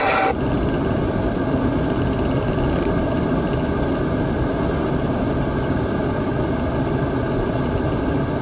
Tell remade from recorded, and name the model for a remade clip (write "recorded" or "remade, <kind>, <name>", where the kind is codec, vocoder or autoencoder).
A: recorded